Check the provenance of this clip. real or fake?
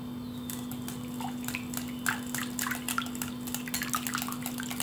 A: real